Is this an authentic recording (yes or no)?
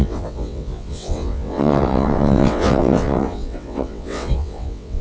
no